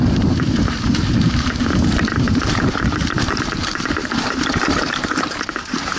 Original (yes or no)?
no